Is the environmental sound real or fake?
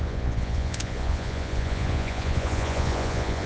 fake